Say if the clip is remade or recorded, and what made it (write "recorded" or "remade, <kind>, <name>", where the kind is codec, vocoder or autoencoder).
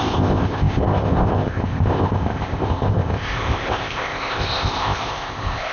remade, codec, ZipCodec